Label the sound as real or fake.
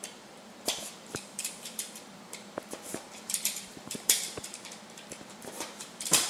fake